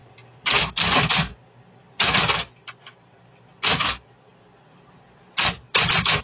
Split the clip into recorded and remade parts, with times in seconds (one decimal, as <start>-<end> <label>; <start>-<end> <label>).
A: 0.0-6.2 recorded